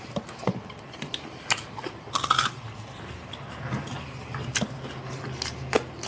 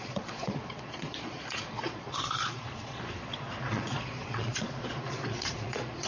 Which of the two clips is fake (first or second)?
second